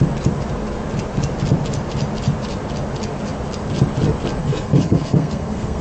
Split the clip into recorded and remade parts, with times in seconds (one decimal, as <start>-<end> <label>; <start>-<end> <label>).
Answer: 0.0-4.4 recorded; 4.4-5.8 remade